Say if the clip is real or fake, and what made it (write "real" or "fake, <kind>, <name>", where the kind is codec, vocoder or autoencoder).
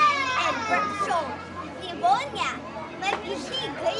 real